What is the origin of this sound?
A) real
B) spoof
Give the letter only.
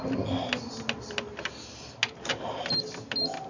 A